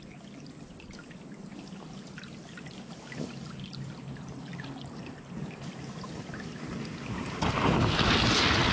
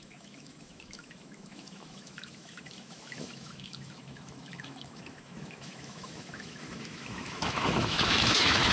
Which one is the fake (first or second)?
second